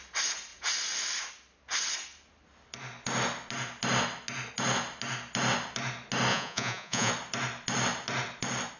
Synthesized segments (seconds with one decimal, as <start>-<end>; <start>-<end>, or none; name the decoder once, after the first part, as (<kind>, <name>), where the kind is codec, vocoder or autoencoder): 6.3-7.1 (vocoder, Vocos)